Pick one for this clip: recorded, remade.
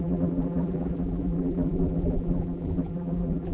remade